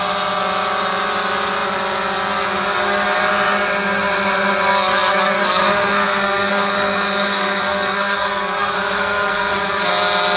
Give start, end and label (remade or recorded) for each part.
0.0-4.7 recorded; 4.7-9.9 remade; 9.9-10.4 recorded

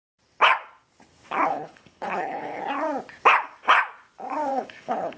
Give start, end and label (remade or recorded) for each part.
0.0-1.5 recorded; 1.5-2.6 remade; 2.6-4.5 recorded; 4.5-5.2 remade